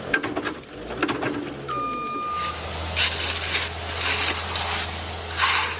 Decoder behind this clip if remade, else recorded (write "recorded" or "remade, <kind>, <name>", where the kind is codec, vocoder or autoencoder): recorded